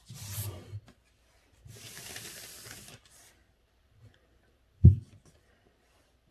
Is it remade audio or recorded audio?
remade